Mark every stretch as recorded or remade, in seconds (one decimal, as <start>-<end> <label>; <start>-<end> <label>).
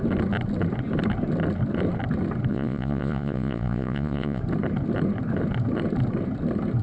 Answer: 0.0-2.5 recorded; 2.5-4.4 remade; 4.4-6.8 recorded